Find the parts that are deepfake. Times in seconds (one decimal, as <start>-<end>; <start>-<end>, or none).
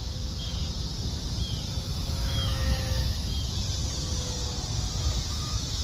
0.0-0.6; 1.8-3.3; 5.3-5.8